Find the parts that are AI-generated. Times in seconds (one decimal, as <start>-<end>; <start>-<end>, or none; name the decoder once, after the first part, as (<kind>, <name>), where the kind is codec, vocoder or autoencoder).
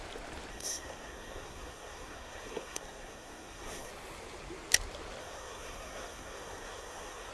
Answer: 0.5-3.9 (codec, SNAC); 5.2-7.3